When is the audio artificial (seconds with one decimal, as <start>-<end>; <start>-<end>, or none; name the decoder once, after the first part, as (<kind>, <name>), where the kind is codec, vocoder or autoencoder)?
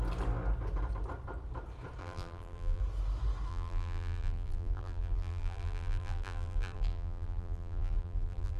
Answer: 2.0-2.8 (vocoder, BigVGAN v2); 3.5-8.6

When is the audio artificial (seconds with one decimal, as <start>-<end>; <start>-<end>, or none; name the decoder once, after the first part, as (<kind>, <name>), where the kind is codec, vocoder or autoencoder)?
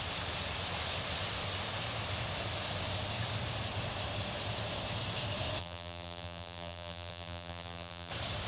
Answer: 5.6-8.1 (vocoder, BigVGAN v2)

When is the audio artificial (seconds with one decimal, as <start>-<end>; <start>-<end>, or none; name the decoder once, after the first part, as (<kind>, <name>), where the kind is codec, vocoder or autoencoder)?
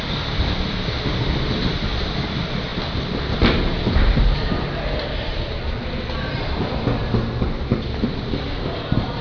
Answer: 0.0-7.0 (vocoder, BigVGAN v2); 7.7-9.2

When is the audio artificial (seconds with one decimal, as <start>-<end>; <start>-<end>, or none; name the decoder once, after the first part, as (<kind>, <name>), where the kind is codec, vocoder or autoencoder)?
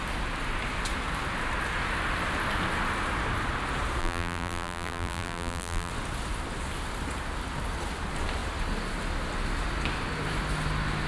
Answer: 4.0-5.9 (vocoder, BigVGAN v2)